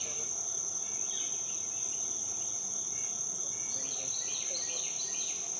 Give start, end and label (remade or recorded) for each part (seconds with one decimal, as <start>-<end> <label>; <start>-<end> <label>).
0.0-5.6 recorded